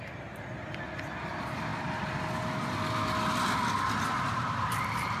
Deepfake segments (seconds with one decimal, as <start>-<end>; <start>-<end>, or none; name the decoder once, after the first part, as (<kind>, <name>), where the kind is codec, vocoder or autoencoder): none